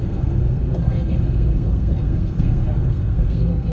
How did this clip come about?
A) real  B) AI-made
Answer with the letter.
B